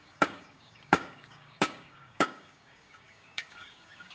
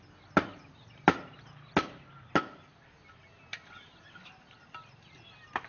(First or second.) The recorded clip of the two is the second